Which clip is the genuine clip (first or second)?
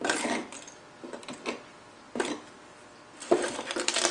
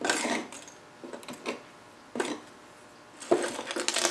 second